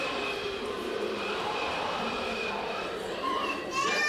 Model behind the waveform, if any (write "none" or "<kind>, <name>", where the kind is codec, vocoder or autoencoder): vocoder, BigVGAN v2